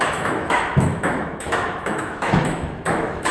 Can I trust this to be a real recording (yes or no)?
no